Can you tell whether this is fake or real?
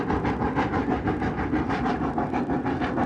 real